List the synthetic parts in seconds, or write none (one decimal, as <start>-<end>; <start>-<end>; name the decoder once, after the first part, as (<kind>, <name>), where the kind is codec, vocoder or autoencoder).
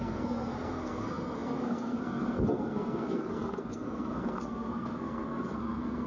0.0-6.1 (codec, SNAC)